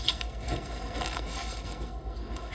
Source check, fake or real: fake